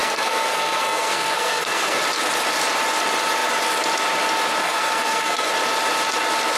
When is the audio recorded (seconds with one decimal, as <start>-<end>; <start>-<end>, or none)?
2.0-4.6; 5.5-6.6